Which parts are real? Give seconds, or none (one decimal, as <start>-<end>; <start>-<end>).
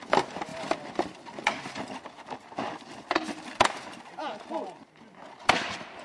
0.0-6.0